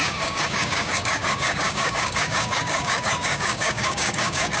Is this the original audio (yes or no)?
no